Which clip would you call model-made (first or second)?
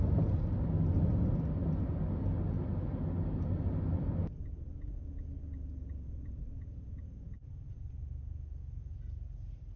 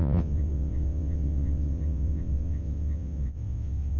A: second